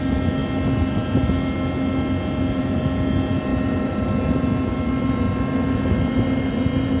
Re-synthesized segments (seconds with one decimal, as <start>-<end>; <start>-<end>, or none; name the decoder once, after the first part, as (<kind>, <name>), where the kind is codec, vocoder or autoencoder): none

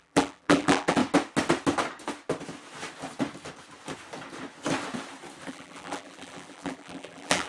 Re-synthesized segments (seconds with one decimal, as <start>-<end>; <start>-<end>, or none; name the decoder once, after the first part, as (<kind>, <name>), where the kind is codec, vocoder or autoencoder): 0.0-1.0 (vocoder, BigVGAN v2); 5.5-7.5

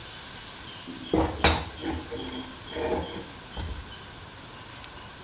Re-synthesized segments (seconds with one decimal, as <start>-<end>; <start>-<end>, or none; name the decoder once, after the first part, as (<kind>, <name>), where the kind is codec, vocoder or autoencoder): none

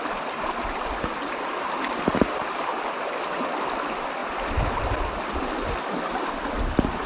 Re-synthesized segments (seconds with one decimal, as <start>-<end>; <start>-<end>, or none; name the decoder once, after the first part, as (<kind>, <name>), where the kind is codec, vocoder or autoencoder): 2.1-2.8 (vocoder, BigVGAN v2); 4.2-5.0

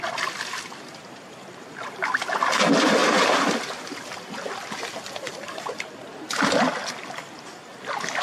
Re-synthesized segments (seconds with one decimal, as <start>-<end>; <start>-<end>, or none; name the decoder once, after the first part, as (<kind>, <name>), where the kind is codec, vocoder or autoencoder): none

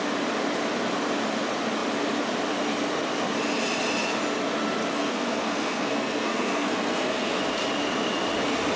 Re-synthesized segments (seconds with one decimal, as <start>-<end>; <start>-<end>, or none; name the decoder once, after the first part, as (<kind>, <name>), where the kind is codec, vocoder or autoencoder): 5.0-7.4 (codec, SNAC)

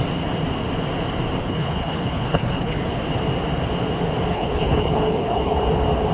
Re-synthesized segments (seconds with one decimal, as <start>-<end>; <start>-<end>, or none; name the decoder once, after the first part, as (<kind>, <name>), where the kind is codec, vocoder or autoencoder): 1.4-3.0 (codec, HILCodec); 4.3-5.6

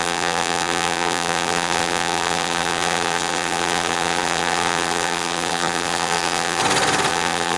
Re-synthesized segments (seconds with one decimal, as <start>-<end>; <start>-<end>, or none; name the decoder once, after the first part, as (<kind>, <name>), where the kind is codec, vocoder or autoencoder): 0.0-6.6 (vocoder, BigVGAN v2); 7.1-7.6